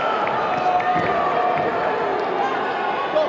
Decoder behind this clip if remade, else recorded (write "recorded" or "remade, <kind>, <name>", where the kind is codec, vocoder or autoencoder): recorded